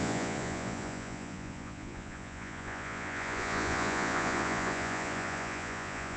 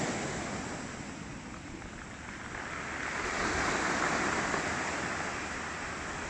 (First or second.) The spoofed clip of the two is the first